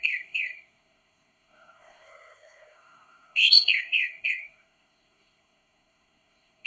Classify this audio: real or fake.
fake